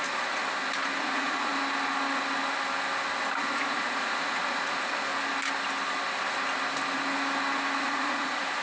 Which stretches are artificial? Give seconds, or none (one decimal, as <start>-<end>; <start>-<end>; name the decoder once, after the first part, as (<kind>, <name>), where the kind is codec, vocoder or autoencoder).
0.0-0.4 (vocoder, Vocos); 1.0-1.5; 3.4-5.1; 7.8-8.6